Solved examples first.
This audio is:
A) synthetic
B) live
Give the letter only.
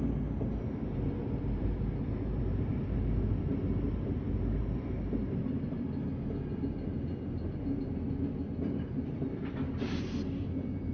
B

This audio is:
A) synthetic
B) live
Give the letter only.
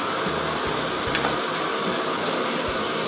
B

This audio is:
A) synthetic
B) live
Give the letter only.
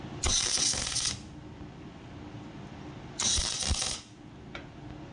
B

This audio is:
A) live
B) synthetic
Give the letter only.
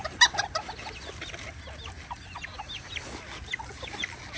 A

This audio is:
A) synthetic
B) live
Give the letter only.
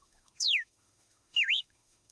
A